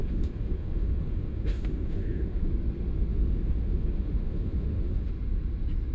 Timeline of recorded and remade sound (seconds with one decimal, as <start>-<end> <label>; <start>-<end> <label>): 0.0-2.5 remade; 2.5-3.1 recorded; 3.1-5.1 remade; 5.1-5.9 recorded